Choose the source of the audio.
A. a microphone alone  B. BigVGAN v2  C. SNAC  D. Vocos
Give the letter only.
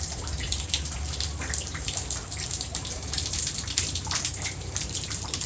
B